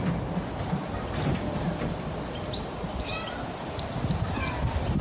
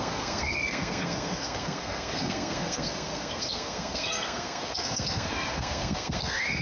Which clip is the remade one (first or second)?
second